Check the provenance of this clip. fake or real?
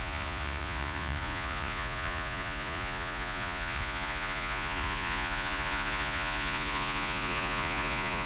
fake